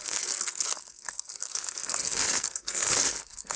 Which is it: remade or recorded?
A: remade